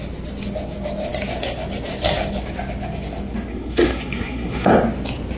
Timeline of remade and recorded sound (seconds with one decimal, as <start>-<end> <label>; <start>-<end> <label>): 0.0-3.5 recorded; 3.5-4.7 remade; 4.7-5.4 recorded